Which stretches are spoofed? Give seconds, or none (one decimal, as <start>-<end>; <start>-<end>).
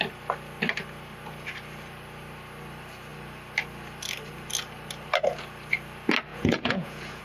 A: 6.3-7.2